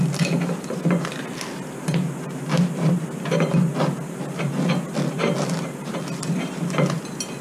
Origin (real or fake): real